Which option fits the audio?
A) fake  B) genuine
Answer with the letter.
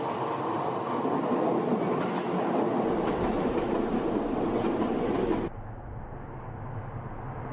B